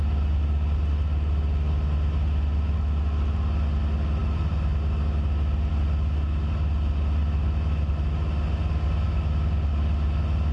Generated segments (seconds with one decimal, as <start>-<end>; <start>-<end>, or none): none